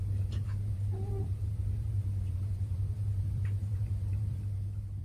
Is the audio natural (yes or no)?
no